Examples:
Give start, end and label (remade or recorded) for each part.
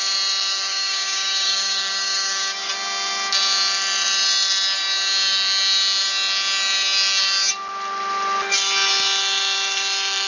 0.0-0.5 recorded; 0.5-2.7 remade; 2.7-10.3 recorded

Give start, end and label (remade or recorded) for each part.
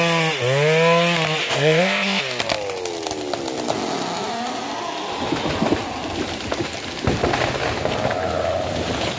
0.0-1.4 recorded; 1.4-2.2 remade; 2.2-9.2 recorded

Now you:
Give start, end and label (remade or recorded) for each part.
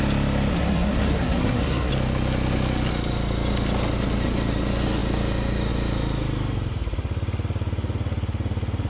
0.0-0.5 recorded; 0.5-1.9 remade; 1.9-8.9 recorded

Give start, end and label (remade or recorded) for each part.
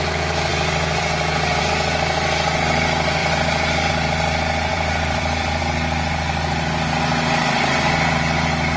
0.0-0.5 recorded; 0.5-1.6 remade; 1.6-3.2 recorded; 3.2-3.9 remade; 3.9-4.7 recorded; 4.7-5.6 remade; 5.6-8.8 recorded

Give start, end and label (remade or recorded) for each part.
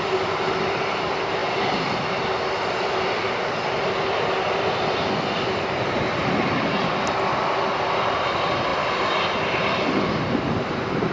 0.0-11.1 recorded